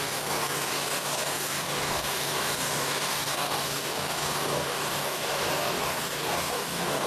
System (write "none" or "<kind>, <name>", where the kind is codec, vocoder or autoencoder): codec, DAC